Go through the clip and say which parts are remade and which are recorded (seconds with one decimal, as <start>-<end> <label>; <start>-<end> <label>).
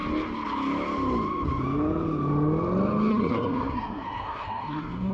0.0-3.1 recorded; 3.1-5.1 remade